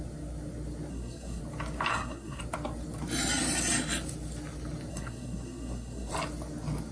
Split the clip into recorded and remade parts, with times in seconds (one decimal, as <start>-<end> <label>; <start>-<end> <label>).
0.0-0.9 recorded; 0.9-1.4 remade; 1.4-1.9 recorded; 1.9-2.4 remade; 2.4-4.9 recorded; 4.9-6.1 remade; 6.1-6.9 recorded